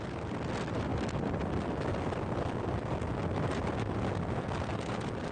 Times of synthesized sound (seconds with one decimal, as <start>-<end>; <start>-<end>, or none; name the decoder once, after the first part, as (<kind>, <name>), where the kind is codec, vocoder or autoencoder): none

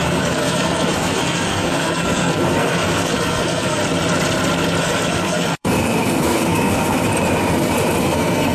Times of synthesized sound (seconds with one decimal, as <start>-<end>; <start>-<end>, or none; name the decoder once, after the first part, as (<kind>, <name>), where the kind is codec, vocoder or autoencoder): 0.0-3.8 (codec, SNAC); 4.8-7.1; 8.0-8.5